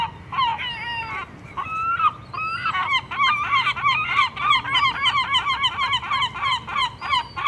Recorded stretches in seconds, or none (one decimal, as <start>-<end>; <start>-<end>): 0.0-7.5